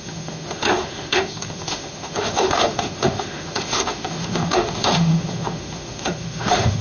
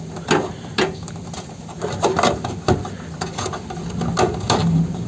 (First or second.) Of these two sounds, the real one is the second